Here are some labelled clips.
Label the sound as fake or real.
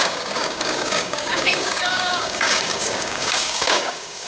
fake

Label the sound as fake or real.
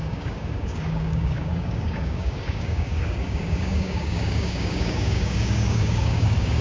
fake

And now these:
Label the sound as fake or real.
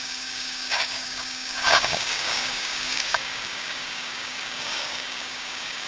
fake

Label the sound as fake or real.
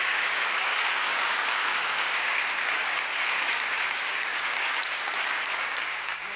fake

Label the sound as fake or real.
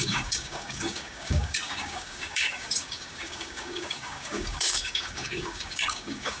fake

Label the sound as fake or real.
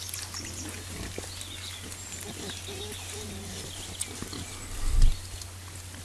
real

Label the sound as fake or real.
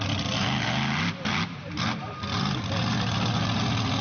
real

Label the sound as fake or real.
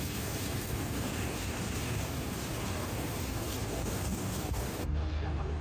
fake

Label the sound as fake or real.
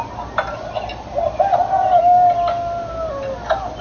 real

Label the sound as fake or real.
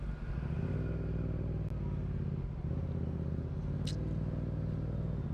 real